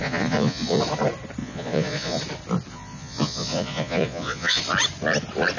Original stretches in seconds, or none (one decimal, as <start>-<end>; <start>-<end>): 0.8-1.4; 2.2-2.7; 4.6-5.6